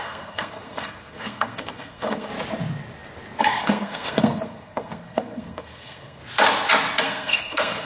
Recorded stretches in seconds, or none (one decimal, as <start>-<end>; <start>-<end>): 2.3-3.4; 6.2-7.0